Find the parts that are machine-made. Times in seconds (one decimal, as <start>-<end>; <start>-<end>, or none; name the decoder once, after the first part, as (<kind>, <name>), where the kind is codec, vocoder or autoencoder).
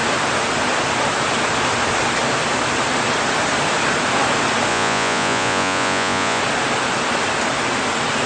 4.7-6.4 (vocoder, Vocos)